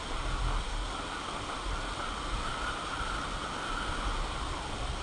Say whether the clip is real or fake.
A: real